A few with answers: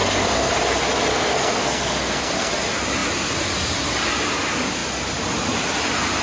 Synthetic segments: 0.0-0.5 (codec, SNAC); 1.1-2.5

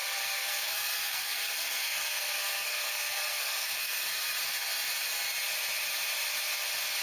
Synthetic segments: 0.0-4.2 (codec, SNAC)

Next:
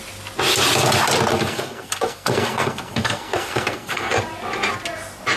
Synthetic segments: 1.3-4.2 (codec, SNAC)